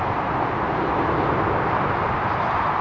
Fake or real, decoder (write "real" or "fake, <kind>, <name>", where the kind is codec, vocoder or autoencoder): real